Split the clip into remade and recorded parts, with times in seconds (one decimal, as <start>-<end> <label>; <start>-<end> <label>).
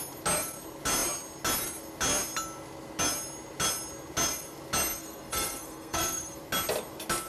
0.0-5.0 recorded; 5.0-6.4 remade; 6.4-7.3 recorded